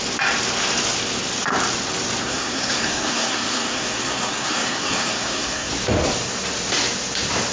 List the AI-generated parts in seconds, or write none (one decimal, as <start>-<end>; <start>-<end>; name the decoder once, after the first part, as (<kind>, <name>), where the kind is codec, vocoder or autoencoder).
2.2-5.7 (codec, SNAC)

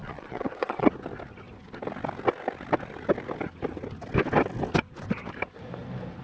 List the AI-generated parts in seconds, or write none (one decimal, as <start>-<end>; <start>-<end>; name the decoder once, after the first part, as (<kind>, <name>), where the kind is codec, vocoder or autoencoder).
0.0-0.9 (vocoder, Vocos)

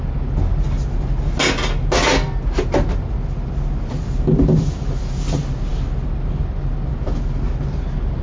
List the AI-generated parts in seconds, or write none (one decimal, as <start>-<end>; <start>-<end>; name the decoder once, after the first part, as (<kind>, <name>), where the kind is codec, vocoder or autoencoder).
none